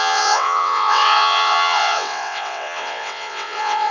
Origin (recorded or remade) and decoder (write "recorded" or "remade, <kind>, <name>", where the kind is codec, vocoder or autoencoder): remade, vocoder, WaveNeXt